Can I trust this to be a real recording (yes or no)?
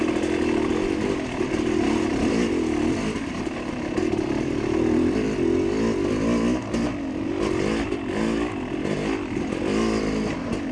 yes